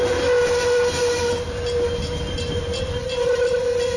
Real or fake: real